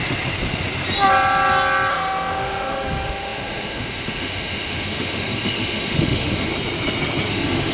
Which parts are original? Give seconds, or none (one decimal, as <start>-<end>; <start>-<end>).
0.0-1.9; 6.5-7.3